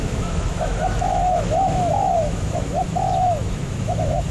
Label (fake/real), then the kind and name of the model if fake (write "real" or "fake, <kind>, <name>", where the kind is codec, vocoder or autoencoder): fake, autoencoder, DAC-VAE